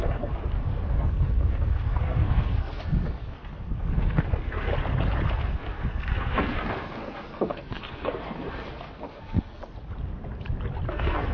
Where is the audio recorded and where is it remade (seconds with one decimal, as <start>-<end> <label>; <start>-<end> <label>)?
0.0-4.7 remade; 4.7-5.3 recorded; 5.3-9.6 remade; 9.6-10.9 recorded; 10.9-11.3 remade

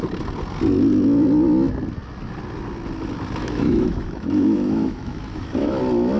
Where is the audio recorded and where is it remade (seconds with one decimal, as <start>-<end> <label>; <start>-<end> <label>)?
0.0-3.4 recorded; 3.4-5.8 remade; 5.8-6.2 recorded

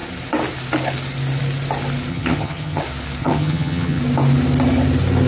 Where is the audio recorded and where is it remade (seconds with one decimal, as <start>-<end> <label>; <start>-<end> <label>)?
0.0-2.1 recorded; 2.1-2.8 remade; 2.8-3.2 recorded; 3.2-4.0 remade; 4.0-5.3 recorded

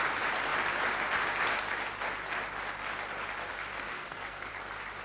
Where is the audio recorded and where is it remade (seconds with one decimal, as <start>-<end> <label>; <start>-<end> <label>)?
0.0-3.9 recorded; 3.9-4.5 remade; 4.5-5.0 recorded